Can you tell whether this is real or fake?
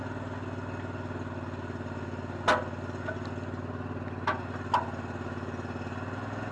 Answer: real